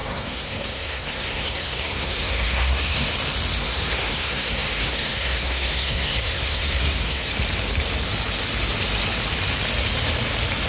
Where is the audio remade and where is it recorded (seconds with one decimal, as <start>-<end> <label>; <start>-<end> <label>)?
0.0-3.1 remade; 3.1-3.6 recorded; 3.6-7.3 remade; 7.3-10.7 recorded